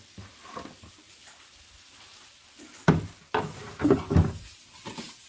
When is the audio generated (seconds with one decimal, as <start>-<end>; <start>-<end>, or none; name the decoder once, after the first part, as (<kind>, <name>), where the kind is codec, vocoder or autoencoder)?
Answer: none